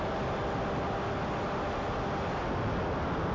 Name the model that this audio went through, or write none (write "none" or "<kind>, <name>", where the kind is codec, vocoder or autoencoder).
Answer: none